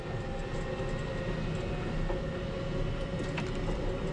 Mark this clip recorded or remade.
recorded